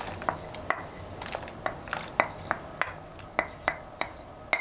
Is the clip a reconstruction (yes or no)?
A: no